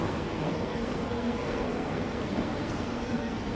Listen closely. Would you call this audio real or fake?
fake